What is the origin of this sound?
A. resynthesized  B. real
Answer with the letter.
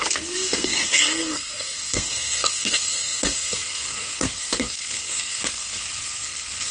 A